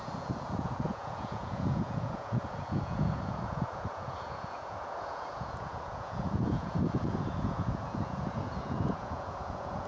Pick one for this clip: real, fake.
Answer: fake